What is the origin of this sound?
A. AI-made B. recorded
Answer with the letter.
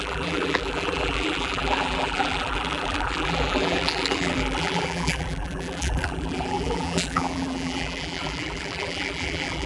A